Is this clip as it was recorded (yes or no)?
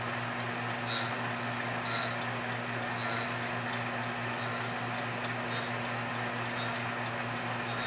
yes